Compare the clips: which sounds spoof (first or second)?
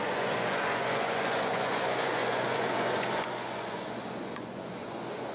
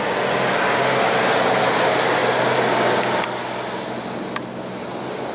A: first